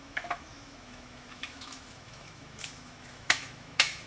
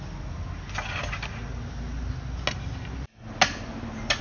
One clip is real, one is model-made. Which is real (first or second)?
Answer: second